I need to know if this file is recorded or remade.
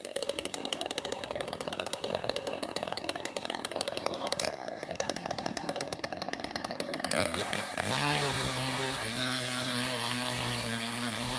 remade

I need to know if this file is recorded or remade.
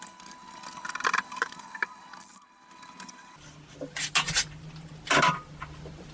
recorded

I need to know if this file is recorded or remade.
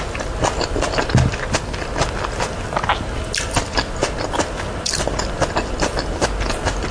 recorded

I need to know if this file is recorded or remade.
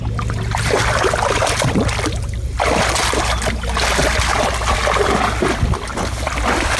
recorded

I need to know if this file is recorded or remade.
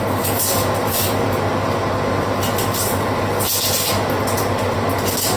recorded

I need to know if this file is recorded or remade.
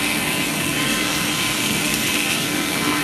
remade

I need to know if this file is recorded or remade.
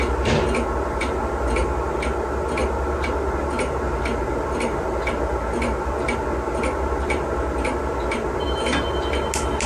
recorded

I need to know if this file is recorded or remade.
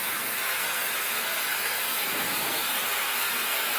remade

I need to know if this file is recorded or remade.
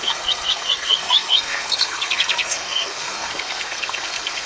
remade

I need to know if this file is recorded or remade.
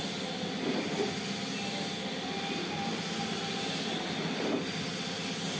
recorded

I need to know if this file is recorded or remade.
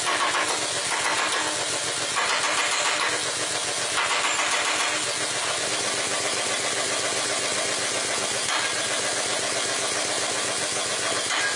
recorded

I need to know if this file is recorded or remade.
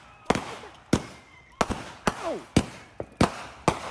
recorded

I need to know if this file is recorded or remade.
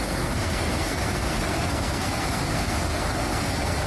remade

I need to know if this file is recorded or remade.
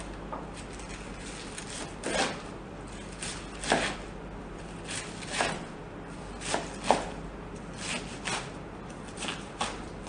recorded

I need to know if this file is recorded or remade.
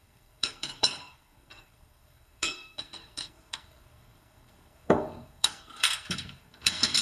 remade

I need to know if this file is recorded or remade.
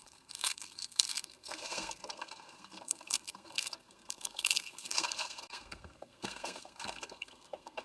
remade